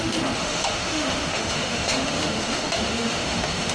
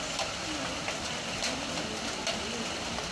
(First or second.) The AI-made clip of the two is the first